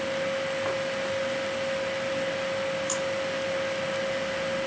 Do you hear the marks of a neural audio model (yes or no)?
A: no